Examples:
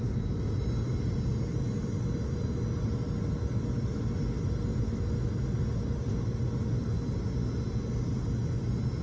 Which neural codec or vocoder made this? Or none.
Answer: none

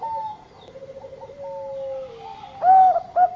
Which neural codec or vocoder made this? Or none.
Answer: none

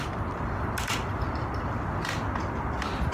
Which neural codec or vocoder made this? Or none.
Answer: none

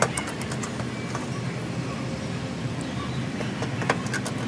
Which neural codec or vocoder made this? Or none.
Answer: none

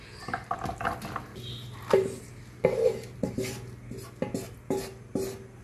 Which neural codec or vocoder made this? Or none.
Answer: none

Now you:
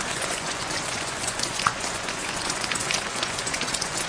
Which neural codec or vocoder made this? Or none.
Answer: vocoder, Vocos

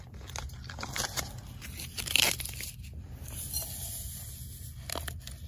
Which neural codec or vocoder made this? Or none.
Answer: none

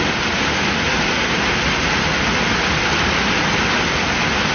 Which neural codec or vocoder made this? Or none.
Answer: none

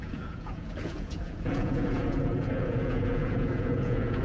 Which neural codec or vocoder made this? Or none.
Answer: vocoder, Vocos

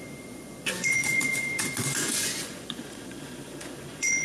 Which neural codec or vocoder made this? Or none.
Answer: vocoder, Vocos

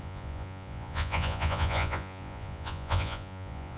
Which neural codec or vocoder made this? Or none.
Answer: vocoder, Vocos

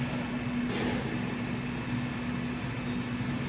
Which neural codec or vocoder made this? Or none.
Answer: none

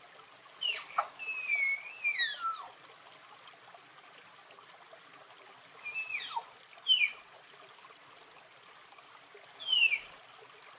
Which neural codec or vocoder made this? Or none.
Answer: none